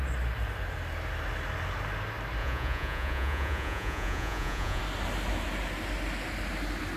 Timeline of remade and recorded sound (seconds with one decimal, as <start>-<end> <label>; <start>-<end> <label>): 0.0-2.4 recorded; 2.4-4.8 remade; 4.8-7.0 recorded